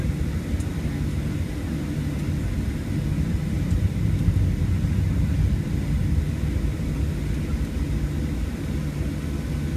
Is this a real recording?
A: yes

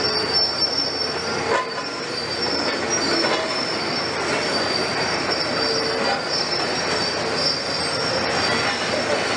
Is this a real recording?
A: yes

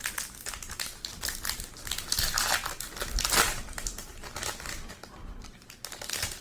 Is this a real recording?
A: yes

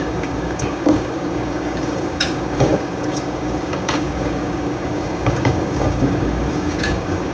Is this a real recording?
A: no